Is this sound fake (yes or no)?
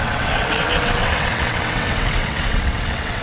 yes